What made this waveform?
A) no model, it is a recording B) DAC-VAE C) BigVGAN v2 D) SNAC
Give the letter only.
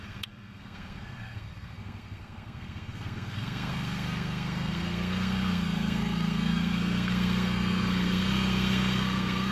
D